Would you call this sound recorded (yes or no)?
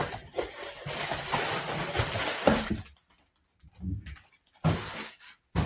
yes